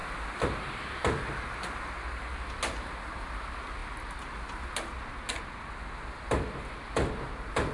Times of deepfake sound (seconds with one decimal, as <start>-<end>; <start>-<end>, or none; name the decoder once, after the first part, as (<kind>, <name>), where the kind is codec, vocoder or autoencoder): none